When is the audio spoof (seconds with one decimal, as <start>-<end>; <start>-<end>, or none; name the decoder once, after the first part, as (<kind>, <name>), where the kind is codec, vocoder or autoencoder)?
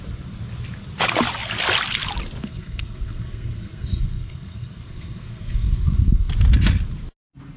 2.4-6.3 (codec, SNAC)